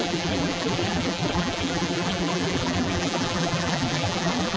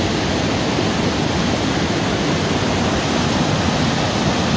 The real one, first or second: second